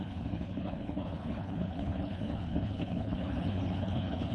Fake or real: fake